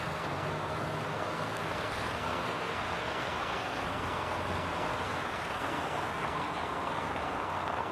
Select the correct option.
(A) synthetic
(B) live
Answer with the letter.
A